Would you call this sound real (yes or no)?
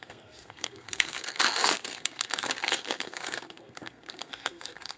no